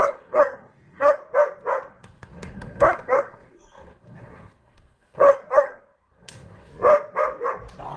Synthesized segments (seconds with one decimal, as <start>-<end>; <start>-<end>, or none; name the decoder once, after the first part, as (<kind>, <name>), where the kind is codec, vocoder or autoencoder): 0.0-1.2 (codec, SNAC); 1.9-6.7